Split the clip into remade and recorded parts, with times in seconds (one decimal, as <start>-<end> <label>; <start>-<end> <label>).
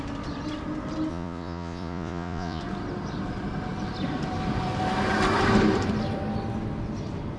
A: 0.0-1.1 recorded; 1.1-2.6 remade; 2.6-7.4 recorded